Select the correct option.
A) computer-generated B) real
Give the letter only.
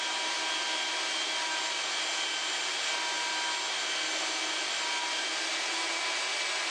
B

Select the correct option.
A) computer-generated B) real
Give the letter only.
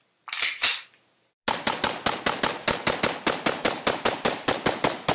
B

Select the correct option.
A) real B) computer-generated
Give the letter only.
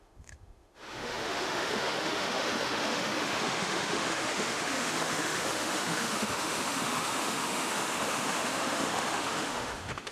B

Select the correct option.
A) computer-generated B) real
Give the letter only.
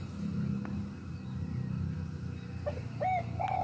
B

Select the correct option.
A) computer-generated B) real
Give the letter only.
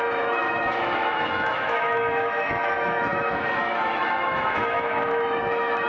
A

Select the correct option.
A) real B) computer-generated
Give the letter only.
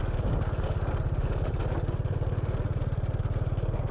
A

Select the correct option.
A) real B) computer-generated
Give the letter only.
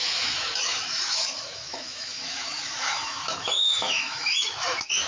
B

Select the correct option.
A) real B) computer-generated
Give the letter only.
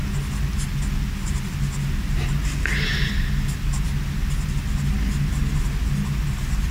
A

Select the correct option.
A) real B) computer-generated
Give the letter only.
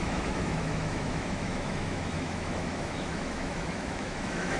B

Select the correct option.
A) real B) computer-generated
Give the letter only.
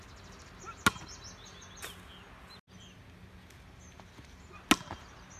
A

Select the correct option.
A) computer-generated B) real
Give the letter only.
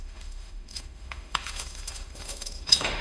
A